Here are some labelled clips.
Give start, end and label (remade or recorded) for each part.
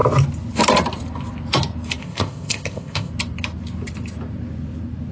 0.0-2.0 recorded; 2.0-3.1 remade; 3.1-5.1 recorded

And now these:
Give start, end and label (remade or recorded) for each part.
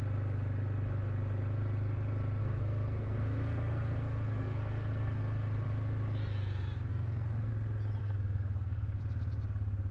0.0-2.4 recorded; 2.4-5.2 remade; 5.2-6.9 recorded; 6.9-7.5 remade; 7.5-8.0 recorded; 8.0-9.0 remade; 9.0-9.9 recorded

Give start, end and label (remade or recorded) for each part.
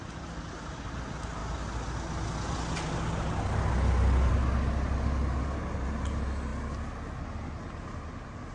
0.0-8.5 recorded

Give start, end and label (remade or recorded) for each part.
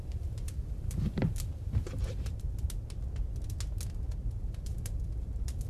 0.0-2.5 remade; 2.5-4.2 recorded; 4.2-5.7 remade